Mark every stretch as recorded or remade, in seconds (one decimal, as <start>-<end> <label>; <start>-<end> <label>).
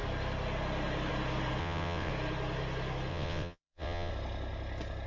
0.0-1.6 recorded; 1.6-2.1 remade; 2.1-3.1 recorded; 3.1-4.1 remade; 4.1-5.1 recorded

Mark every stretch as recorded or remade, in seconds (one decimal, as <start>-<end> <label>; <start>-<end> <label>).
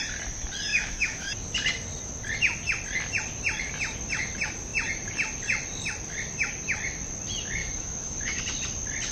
0.0-0.7 recorded; 0.7-1.3 remade; 1.3-7.6 recorded; 7.6-8.4 remade; 8.4-9.1 recorded